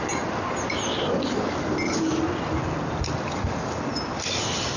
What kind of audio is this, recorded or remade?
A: recorded